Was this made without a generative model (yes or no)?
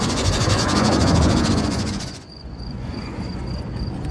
no